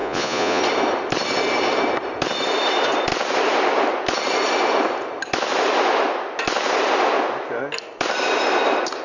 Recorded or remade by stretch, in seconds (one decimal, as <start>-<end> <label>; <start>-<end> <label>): 0.0-0.6 remade; 0.6-9.0 recorded